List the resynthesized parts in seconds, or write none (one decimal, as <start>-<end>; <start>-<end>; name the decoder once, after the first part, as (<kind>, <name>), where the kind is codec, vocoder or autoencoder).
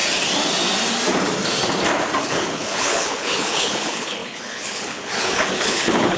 2.2-6.2 (codec, HILCodec)